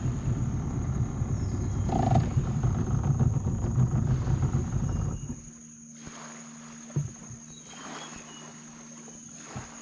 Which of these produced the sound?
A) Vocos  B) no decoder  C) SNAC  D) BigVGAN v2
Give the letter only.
B